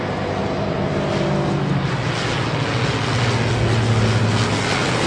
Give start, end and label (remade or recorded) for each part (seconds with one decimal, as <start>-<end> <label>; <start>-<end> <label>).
0.0-5.1 recorded